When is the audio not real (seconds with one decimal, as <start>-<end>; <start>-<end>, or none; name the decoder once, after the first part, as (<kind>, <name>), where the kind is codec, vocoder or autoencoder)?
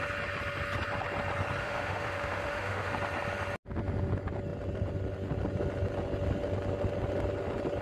1.6-2.9 (autoencoder, DAC-VAE)